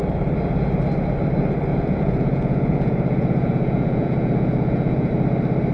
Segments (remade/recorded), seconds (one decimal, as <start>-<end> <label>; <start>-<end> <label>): 0.0-1.7 recorded; 1.7-5.1 remade; 5.1-5.7 recorded